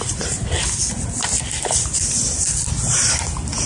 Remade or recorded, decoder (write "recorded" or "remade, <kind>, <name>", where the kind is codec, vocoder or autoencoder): recorded